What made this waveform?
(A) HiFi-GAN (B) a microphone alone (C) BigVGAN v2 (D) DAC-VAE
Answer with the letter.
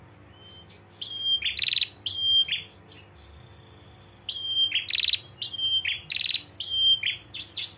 B